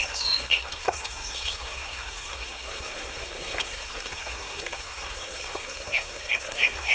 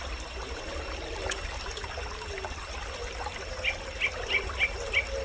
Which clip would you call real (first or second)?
second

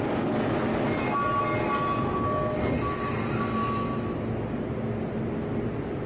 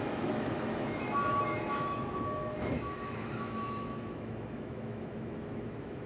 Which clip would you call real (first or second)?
first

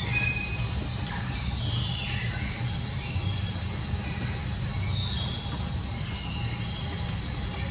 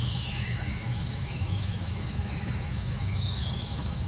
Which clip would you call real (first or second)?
first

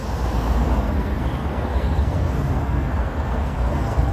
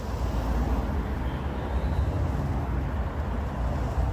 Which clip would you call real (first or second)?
second